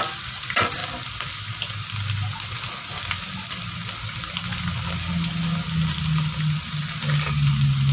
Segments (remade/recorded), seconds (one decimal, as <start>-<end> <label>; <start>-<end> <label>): 0.0-7.9 recorded